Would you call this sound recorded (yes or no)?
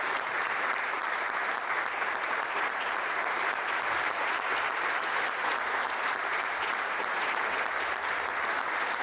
no